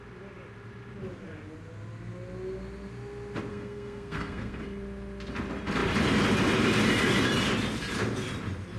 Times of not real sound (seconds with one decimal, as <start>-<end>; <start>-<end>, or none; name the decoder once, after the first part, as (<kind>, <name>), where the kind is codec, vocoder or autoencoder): 3.5-4.6 (codec, SNAC)